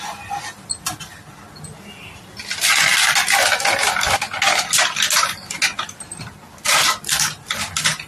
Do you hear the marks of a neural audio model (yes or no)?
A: no